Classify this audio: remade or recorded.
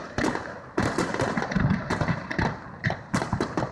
remade